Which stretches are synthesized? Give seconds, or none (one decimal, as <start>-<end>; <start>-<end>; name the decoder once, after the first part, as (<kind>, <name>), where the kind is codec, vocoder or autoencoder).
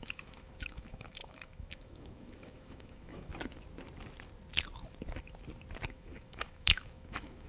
0.0-3.3 (autoencoder, DAC-VAE); 5.9-7.5